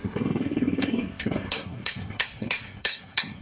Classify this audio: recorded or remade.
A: remade